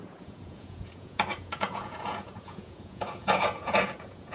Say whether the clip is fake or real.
fake